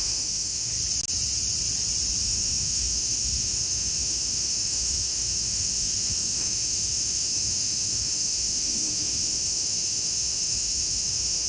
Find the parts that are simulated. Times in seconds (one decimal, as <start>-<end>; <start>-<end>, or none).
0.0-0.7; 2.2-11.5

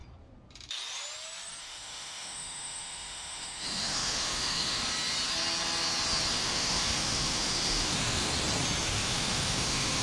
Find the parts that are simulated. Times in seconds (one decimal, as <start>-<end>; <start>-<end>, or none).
1.6-4.8; 6.3-8.3; 8.8-10.0

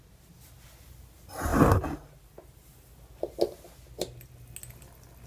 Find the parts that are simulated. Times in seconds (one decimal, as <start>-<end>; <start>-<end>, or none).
none

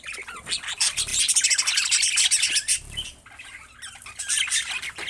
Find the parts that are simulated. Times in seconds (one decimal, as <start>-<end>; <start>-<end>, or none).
none